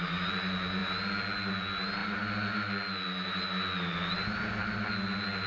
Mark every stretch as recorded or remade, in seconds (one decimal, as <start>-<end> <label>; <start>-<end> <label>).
0.0-5.5 recorded